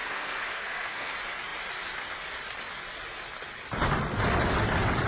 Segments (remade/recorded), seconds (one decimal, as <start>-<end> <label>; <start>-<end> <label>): 0.0-1.1 remade; 1.1-5.1 recorded